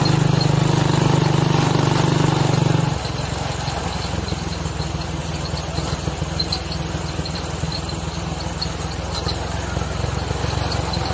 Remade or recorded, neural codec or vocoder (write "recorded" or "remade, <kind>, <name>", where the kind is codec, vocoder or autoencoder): recorded